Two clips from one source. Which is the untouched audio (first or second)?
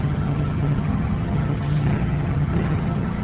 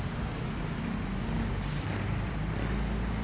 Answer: second